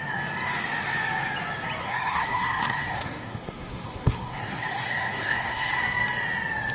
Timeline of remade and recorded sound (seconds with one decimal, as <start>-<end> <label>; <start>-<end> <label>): 0.0-1.8 recorded; 1.8-5.8 remade; 5.8-6.7 recorded